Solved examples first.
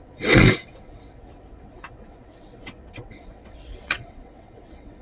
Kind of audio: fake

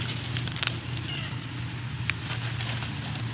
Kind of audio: real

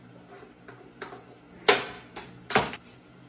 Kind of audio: real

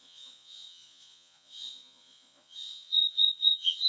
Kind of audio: fake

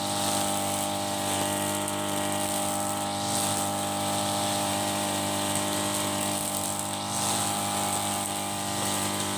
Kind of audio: real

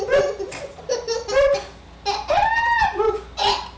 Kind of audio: real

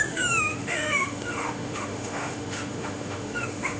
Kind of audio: fake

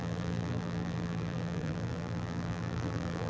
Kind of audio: fake